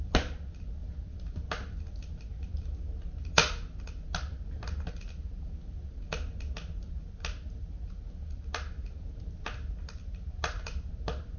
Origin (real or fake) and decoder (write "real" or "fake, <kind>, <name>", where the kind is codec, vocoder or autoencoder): real